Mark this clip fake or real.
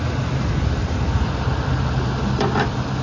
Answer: real